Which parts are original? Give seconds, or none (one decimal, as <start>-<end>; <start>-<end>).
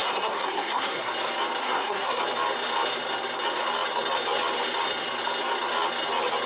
1.1-1.6; 2.2-6.5